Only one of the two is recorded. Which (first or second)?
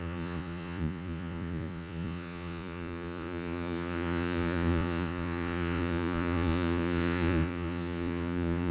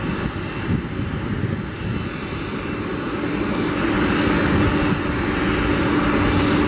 second